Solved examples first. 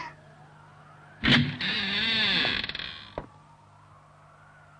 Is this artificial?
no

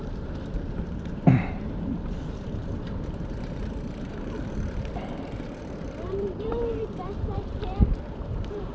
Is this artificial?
yes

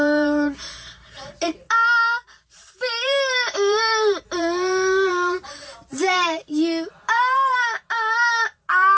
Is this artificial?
yes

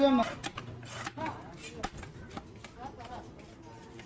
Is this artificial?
no